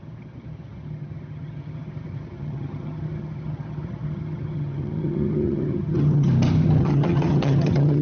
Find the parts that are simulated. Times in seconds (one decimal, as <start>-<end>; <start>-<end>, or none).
0.0-6.3; 6.8-8.0